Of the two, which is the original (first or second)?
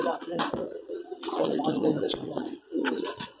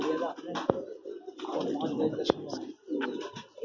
second